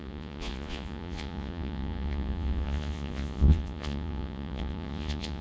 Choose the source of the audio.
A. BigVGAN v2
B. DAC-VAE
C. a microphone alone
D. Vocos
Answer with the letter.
D